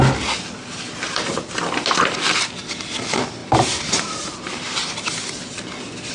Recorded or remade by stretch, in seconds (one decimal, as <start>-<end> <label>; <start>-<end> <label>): 0.0-3.4 recorded; 3.4-4.9 remade; 4.9-6.1 recorded